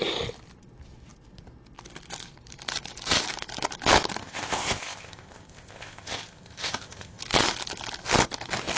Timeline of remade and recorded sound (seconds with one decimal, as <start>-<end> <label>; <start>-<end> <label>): 0.0-4.2 recorded; 4.2-7.2 remade; 7.2-8.8 recorded